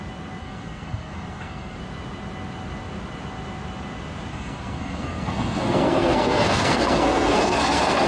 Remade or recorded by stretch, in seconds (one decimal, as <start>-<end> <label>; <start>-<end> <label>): 0.0-0.4 recorded; 0.4-1.8 remade; 1.8-4.3 recorded; 4.3-8.1 remade